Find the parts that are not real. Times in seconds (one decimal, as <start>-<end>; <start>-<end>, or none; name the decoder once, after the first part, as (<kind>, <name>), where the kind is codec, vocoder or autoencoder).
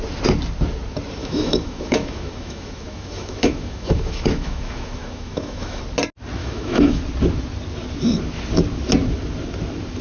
1.2-5.8 (autoencoder, DAC-VAE); 6.4-7.0